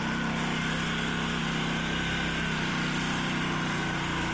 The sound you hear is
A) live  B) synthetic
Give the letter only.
A